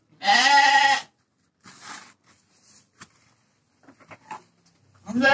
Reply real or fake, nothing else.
real